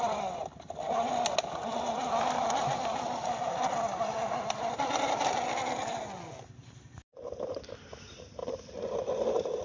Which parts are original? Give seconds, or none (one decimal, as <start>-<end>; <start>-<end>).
0.0-8.4; 9.0-9.6